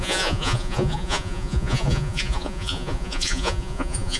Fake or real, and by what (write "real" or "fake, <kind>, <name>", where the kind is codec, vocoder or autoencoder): fake, vocoder, Vocos